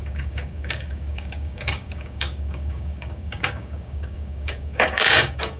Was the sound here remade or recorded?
remade